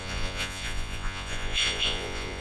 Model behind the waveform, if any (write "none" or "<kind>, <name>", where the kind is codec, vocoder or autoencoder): vocoder, Vocos